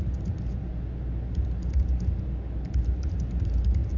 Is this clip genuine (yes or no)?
yes